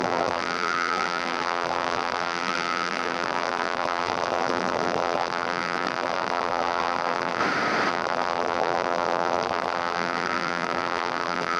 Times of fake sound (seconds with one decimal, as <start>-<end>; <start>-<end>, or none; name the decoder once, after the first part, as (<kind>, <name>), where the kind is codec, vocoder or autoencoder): 0.0-7.4 (vocoder, BigVGAN v2); 7.9-11.6